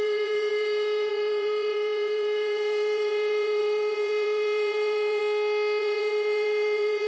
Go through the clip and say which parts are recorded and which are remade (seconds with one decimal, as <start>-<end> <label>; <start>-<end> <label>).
0.0-5.2 remade; 5.2-5.8 recorded; 5.8-7.1 remade